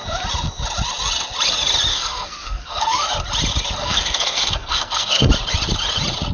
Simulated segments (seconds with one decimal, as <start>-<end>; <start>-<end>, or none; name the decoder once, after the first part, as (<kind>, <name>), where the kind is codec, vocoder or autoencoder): 1.9-3.1 (codec, SNAC); 3.8-5.3